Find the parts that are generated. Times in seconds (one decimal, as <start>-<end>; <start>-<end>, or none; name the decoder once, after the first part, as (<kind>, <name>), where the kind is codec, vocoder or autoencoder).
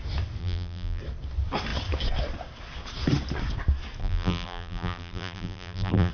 0.4-1.0 (vocoder, BigVGAN v2); 4.0-6.1